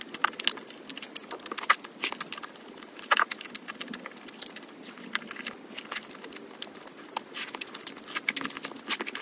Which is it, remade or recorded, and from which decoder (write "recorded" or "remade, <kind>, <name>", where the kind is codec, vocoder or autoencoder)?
recorded